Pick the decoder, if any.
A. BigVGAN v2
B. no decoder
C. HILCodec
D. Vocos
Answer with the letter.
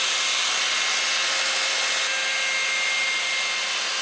B